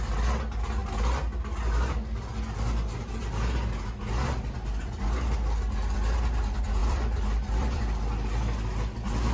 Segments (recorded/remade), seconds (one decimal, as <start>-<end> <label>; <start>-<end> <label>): 0.0-6.8 recorded; 6.8-7.8 remade; 7.8-9.3 recorded